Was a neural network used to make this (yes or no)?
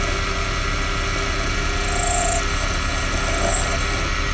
no